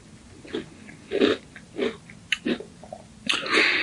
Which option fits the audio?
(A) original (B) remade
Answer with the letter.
A